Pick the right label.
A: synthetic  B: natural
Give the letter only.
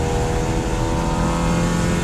B